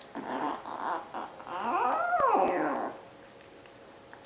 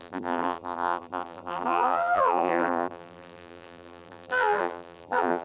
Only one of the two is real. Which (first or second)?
first